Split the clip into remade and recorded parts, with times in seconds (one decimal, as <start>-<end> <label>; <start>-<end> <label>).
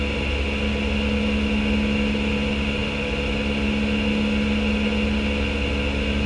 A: 0.0-6.3 recorded